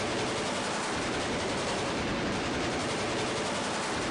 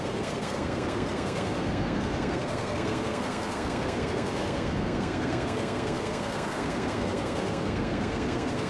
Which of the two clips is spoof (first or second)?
second